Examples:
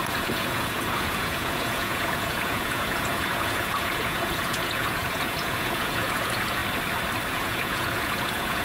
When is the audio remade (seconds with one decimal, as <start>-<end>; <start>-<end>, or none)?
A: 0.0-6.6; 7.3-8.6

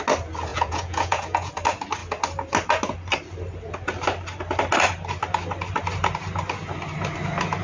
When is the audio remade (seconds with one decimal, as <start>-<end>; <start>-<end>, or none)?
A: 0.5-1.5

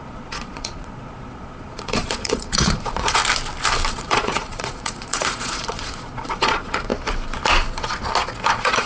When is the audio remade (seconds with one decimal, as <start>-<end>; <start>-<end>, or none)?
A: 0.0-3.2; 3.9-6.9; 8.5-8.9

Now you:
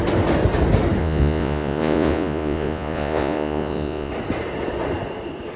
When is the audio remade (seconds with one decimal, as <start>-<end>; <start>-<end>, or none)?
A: 1.0-4.1